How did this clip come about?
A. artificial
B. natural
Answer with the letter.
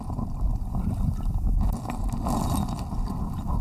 B